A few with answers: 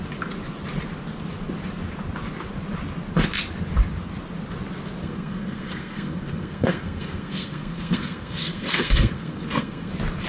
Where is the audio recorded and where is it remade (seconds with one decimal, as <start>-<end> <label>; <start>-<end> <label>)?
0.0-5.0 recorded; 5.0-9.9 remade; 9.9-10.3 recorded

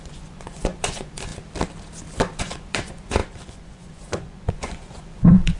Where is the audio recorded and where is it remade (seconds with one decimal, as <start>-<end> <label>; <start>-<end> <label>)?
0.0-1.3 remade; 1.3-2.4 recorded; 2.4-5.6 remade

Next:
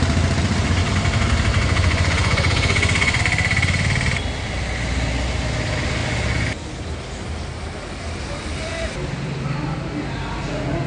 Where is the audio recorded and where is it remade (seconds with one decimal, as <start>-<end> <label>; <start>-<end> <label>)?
0.0-1.5 recorded; 1.5-3.2 remade; 3.2-10.9 recorded

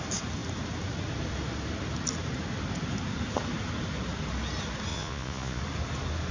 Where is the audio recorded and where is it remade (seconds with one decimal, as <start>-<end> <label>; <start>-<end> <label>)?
0.0-4.9 recorded; 4.9-5.6 remade; 5.6-6.3 recorded

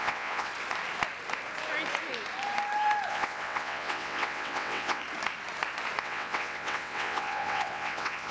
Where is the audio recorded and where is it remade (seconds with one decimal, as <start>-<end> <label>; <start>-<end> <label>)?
0.0-0.5 remade; 0.5-3.1 recorded; 3.1-5.0 remade; 5.0-6.0 recorded; 6.0-8.3 remade